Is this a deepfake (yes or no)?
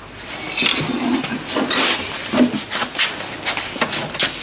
no